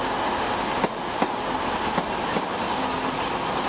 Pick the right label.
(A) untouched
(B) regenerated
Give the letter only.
A